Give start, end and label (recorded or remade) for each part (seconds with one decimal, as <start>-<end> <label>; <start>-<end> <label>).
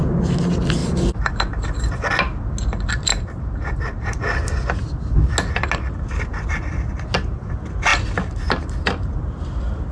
0.0-0.8 recorded; 0.8-1.3 remade; 1.3-3.1 recorded; 3.1-4.2 remade; 4.2-9.9 recorded